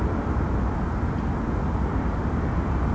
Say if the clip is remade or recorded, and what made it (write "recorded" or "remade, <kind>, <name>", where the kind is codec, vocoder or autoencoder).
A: recorded